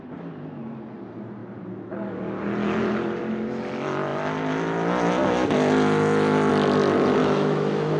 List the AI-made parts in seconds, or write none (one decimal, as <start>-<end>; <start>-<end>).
7.2-8.0